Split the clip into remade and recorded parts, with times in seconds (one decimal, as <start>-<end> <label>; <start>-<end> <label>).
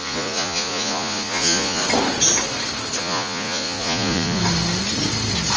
0.0-1.8 remade; 1.8-3.0 recorded; 3.0-4.4 remade; 4.4-5.6 recorded